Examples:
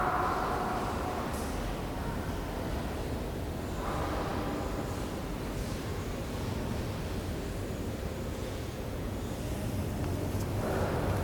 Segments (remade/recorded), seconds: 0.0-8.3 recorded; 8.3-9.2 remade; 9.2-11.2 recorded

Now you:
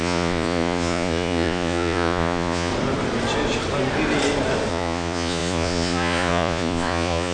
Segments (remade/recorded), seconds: 0.0-2.7 remade; 2.7-4.7 recorded; 4.7-7.3 remade

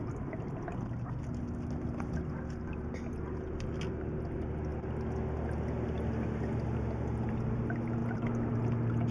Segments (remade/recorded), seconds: 0.0-9.1 recorded

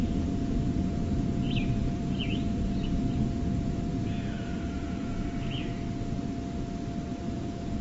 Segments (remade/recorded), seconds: 0.0-5.7 remade; 5.7-7.1 recorded; 7.1-7.8 remade

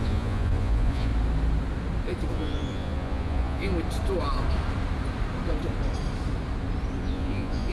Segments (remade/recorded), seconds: 0.0-1.1 remade; 1.1-2.3 recorded; 2.3-3.7 remade; 3.7-7.0 recorded; 7.0-7.7 remade

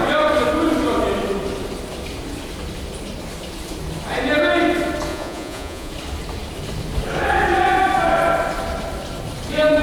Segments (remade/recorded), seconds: 0.0-5.1 recorded; 5.1-5.9 remade; 5.9-9.8 recorded

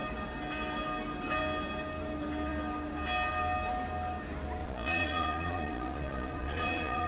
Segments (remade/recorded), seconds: 0.0-4.6 recorded; 4.6-7.1 remade